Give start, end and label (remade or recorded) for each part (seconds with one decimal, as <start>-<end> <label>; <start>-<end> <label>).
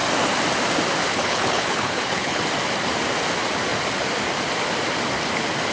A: 0.0-1.1 recorded; 1.1-2.4 remade; 2.4-5.7 recorded